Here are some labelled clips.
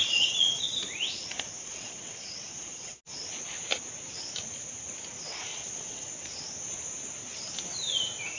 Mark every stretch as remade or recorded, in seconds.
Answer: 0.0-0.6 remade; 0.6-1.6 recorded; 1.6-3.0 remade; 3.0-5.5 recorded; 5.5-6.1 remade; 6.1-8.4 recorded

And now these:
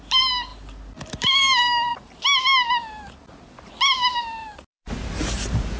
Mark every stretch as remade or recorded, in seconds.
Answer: 0.0-5.8 recorded

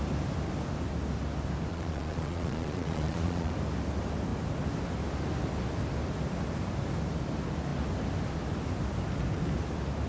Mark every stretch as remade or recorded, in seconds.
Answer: 0.0-1.7 recorded; 1.7-3.5 remade; 3.5-10.1 recorded